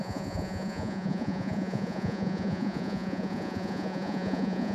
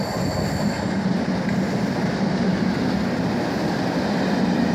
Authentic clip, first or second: second